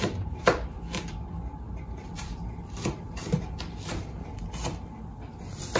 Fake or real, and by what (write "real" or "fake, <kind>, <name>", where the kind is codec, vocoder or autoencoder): fake, vocoder, BigVGAN v2